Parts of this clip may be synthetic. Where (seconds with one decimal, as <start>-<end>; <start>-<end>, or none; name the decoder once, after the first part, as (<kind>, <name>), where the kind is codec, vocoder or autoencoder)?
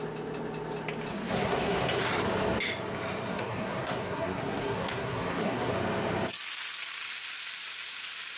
1.1-2.1 (codec, SNAC); 3.3-5.7